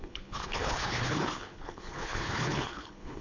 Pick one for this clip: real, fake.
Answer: fake